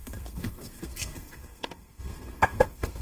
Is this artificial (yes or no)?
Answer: yes